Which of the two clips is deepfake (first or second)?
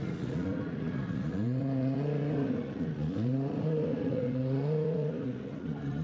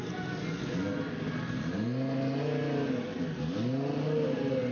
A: first